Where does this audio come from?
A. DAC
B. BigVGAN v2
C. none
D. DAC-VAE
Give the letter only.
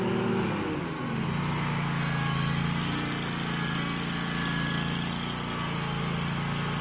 C